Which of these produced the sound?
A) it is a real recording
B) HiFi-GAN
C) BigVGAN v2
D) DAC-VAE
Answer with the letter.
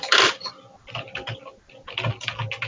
A